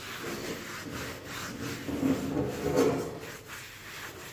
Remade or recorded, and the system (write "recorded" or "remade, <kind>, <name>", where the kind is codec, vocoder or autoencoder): recorded